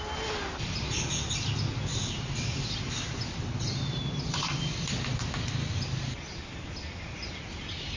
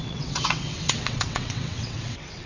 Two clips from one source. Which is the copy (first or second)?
second